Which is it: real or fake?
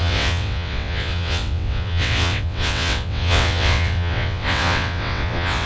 fake